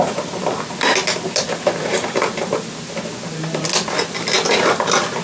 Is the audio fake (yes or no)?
no